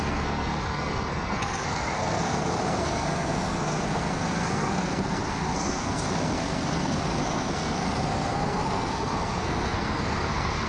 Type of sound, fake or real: fake